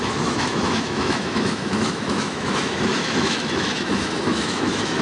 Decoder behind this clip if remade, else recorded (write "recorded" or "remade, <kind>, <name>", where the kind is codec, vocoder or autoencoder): remade, autoencoder, DAC-VAE